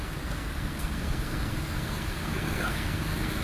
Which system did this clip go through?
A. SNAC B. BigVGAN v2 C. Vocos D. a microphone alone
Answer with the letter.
A